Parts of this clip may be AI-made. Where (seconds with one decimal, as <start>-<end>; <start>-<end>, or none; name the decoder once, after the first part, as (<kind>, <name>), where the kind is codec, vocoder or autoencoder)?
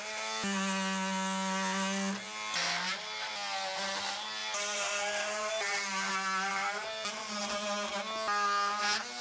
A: 2.6-3.3 (vocoder, BigVGAN v2); 4.4-6.1; 6.5-7.4